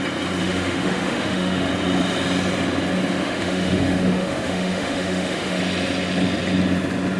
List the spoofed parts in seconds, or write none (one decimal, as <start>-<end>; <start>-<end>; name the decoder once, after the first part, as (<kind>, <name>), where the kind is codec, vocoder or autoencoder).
0.4-1.7 (autoencoder, DAC-VAE); 3.2-5.6